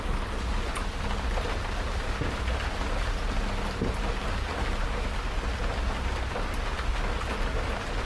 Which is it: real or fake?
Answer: real